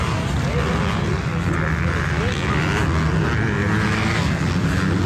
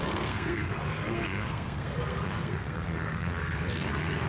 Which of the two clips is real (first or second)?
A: first